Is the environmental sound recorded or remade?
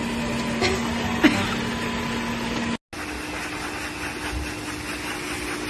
recorded